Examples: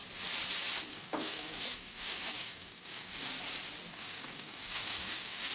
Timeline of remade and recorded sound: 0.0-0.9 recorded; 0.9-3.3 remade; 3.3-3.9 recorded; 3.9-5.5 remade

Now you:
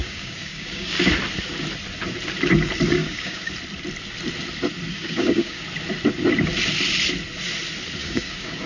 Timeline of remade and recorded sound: 0.0-1.1 remade; 1.1-3.0 recorded; 3.0-3.5 remade; 3.5-4.9 recorded; 4.9-5.6 remade; 5.6-8.0 recorded; 8.0-8.7 remade

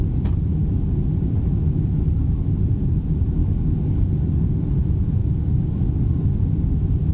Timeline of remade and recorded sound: 0.0-3.4 recorded; 3.4-4.0 remade; 4.0-5.2 recorded; 5.2-5.8 remade; 5.8-7.1 recorded

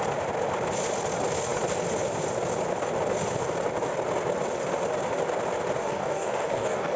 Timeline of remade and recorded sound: 0.0-5.8 recorded; 5.8-7.0 remade

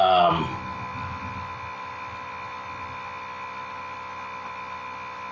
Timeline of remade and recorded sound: 0.0-5.3 recorded

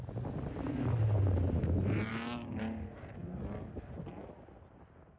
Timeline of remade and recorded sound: 0.0-2.1 recorded; 2.1-2.6 remade; 2.6-5.2 recorded

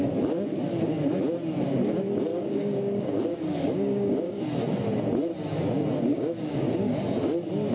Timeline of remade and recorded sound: 0.0-2.3 recorded; 2.3-4.4 remade; 4.4-6.1 recorded; 6.1-7.0 remade; 7.0-7.7 recorded

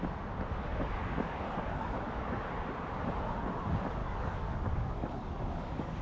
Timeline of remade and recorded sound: 0.0-0.7 recorded; 0.7-2.5 remade; 2.5-4.0 recorded; 4.0-6.0 remade